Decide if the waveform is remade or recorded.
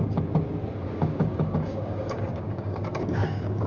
remade